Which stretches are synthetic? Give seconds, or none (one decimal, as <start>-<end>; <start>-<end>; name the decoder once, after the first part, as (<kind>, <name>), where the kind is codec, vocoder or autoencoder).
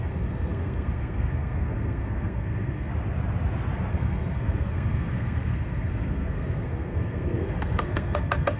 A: 0.0-2.9 (codec, SNAC); 3.9-8.6